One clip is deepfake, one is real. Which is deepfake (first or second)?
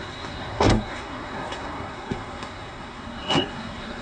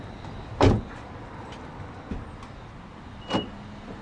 first